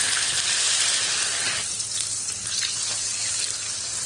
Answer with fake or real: real